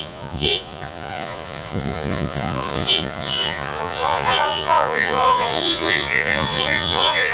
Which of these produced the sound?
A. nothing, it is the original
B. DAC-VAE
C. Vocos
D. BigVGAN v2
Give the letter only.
C